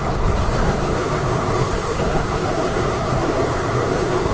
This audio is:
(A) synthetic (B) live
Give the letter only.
A